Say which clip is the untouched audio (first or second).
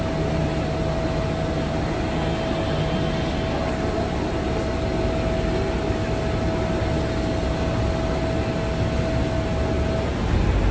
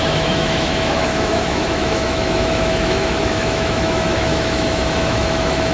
first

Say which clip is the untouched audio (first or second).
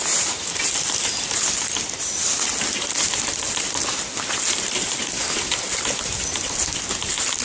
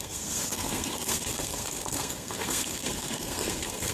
first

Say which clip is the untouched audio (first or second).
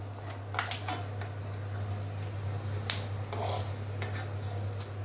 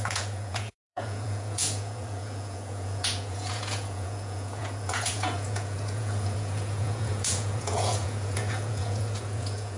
first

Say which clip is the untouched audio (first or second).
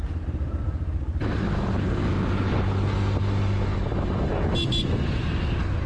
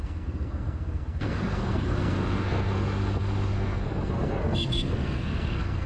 first